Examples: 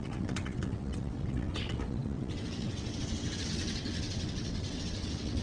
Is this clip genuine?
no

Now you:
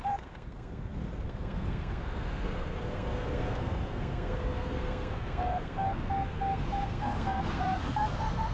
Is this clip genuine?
no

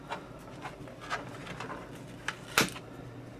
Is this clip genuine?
yes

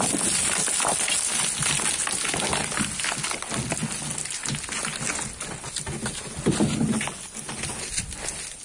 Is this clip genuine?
yes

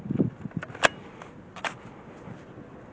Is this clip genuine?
yes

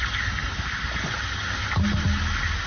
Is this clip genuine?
yes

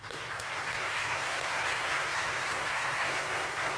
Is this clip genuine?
no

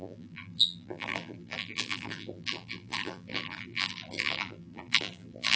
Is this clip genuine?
no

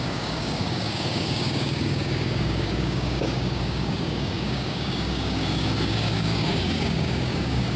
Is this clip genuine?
no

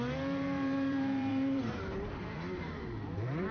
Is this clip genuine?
no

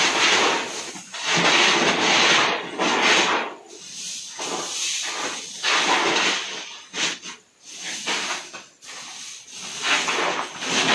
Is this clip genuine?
yes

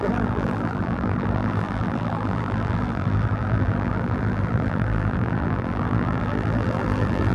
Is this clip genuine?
no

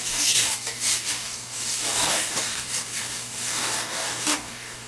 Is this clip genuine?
no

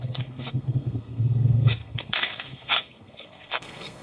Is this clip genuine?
no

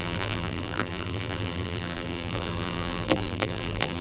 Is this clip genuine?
no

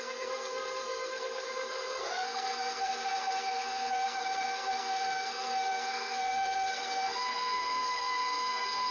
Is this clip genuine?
no